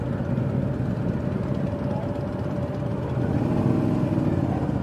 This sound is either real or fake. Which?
real